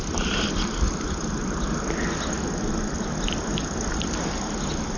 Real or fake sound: real